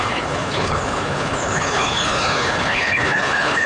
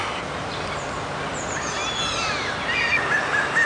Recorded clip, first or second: second